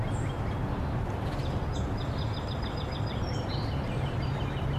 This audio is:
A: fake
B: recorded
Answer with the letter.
B